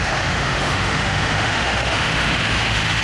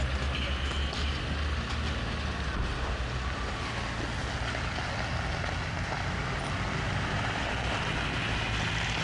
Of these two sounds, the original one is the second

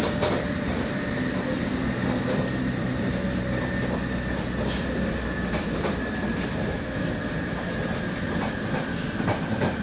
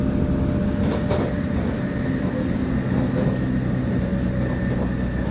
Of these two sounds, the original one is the second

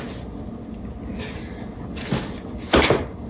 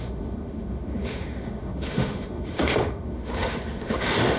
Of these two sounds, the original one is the first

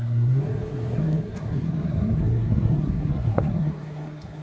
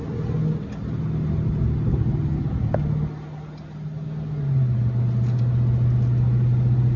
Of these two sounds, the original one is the second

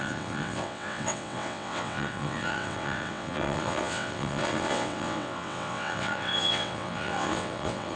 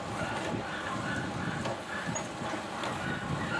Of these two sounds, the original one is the second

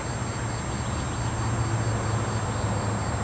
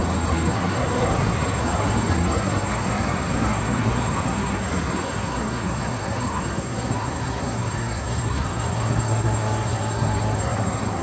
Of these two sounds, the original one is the first